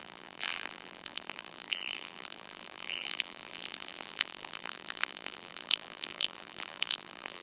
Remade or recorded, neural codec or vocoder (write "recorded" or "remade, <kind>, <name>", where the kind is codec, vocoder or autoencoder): remade, vocoder, BigVGAN v2